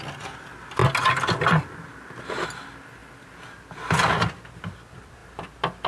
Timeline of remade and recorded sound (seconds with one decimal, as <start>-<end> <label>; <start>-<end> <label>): 0.0-5.9 recorded